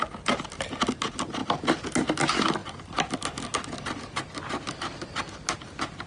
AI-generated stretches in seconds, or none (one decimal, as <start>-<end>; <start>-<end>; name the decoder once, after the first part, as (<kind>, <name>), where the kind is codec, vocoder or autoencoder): none